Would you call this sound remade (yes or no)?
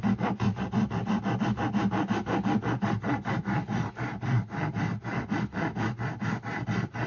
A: no